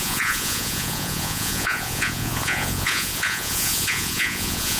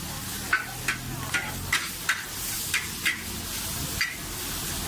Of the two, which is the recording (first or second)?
second